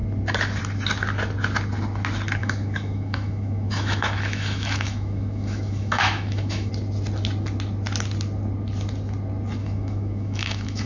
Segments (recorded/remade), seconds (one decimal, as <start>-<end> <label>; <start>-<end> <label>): 0.0-2.4 recorded; 2.4-6.7 remade; 6.7-9.6 recorded; 9.6-10.9 remade